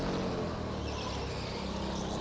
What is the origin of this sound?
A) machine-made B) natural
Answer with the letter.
B